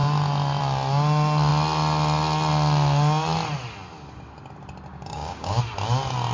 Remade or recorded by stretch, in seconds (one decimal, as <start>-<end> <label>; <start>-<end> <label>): 0.0-4.9 recorded; 4.9-5.6 remade; 5.6-6.3 recorded